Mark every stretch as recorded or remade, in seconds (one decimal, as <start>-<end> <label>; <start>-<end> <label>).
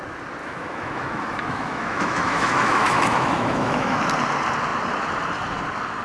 0.0-0.4 recorded; 0.4-4.0 remade; 4.0-6.0 recorded